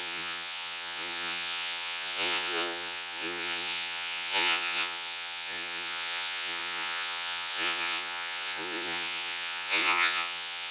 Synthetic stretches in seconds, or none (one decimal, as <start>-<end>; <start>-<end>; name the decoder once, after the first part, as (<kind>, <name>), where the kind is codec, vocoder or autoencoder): 0.0-10.7 (vocoder, Vocos)